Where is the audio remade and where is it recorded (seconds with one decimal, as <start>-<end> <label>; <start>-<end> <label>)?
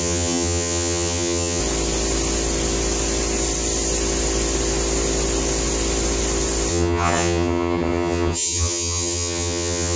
0.0-1.6 remade; 1.6-6.7 recorded; 6.7-10.0 remade